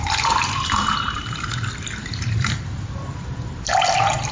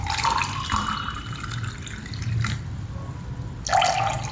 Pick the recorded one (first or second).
second